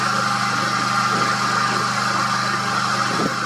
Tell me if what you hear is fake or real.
real